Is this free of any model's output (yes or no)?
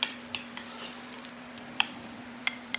no